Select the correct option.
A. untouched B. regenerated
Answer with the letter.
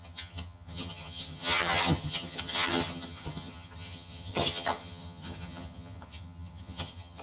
B